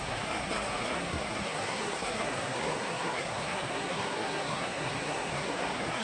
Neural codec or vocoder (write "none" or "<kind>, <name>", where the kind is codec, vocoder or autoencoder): codec, SNAC